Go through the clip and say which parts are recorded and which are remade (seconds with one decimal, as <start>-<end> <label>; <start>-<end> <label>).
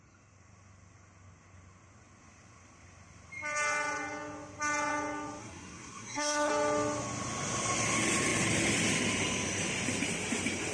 0.0-5.4 recorded; 5.4-6.5 remade; 6.5-10.7 recorded